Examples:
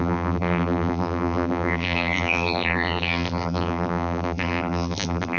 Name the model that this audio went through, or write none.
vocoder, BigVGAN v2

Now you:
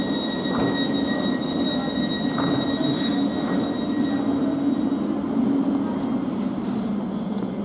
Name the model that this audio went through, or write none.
none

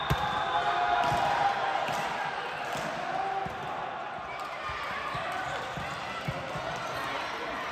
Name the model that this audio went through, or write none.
none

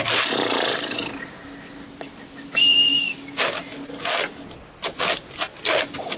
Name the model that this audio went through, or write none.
none